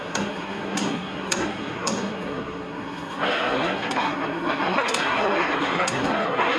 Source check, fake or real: fake